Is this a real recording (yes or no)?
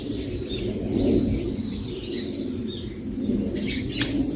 yes